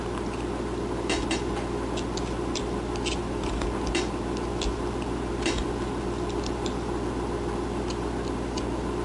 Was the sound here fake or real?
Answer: real